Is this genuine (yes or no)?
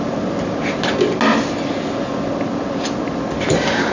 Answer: yes